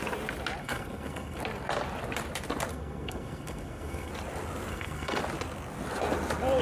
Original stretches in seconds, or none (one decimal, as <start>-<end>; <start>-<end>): 0.0-0.6; 1.4-2.7; 4.1-4.7; 5.2-6.6